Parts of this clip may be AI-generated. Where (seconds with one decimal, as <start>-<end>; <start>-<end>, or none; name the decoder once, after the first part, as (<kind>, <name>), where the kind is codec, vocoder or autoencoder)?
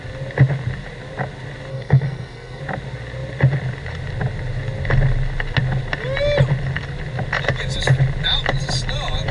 1.7-2.6 (codec, SNAC)